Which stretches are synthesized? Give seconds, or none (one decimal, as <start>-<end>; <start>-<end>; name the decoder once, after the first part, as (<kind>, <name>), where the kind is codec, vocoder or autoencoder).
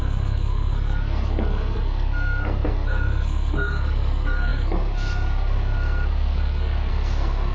0.0-7.5 (codec, SNAC)